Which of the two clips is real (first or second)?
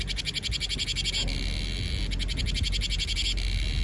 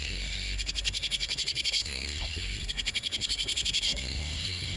first